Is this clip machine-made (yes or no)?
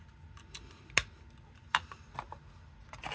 no